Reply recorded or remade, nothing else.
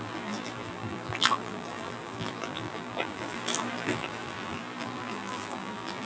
remade